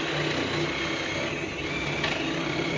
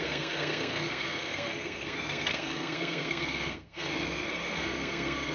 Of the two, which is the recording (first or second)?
first